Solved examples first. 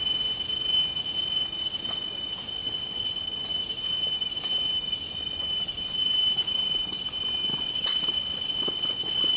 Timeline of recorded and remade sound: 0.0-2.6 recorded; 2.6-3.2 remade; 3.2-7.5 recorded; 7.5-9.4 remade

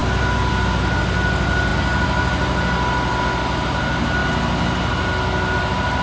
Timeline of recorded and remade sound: 0.0-6.0 recorded

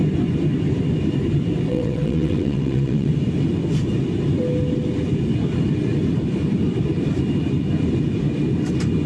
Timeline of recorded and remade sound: 0.0-1.7 recorded; 1.7-3.1 remade; 3.1-9.1 recorded

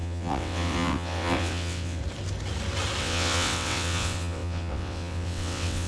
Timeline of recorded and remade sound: 0.0-2.0 remade; 2.0-3.0 recorded; 3.0-5.9 remade

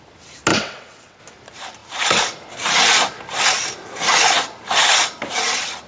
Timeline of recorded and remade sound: 0.0-0.5 recorded; 0.5-1.2 remade; 1.2-5.9 recorded

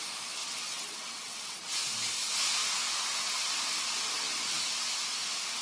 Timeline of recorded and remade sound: 0.0-0.4 recorded; 0.4-1.6 remade; 1.6-5.6 recorded

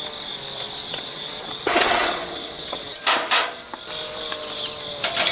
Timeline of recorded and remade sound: 0.0-0.8 recorded; 0.8-3.0 remade; 3.0-5.3 recorded

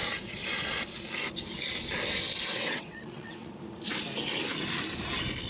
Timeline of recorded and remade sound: 0.0-2.6 recorded; 2.6-3.5 remade; 3.5-5.5 recorded